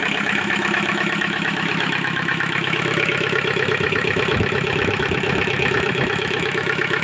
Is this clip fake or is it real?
fake